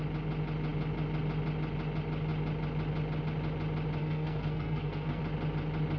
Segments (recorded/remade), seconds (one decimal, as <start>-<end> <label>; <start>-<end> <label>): 0.0-4.0 recorded; 4.0-5.2 remade; 5.2-6.0 recorded

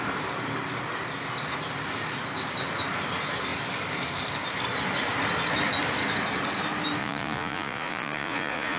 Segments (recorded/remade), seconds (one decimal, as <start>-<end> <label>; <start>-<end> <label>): 0.0-7.0 recorded; 7.0-8.8 remade

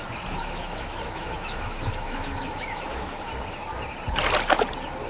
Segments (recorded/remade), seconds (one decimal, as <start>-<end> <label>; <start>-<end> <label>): 0.0-0.4 recorded; 0.4-3.3 remade; 3.3-5.1 recorded

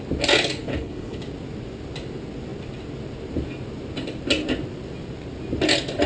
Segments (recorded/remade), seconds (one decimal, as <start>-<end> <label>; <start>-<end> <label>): 0.0-0.6 recorded; 0.6-1.2 remade; 1.2-6.1 recorded